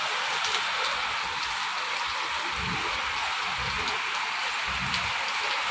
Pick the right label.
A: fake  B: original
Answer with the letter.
B